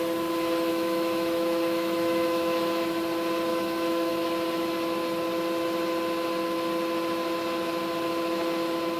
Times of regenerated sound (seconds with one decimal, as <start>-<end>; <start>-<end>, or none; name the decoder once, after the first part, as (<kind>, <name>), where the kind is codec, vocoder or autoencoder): 0.7-2.8 (autoencoder, DAC-VAE); 3.5-4.1